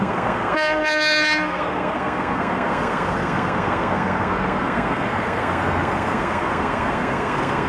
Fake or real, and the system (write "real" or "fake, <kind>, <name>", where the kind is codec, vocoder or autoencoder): fake, codec, SNAC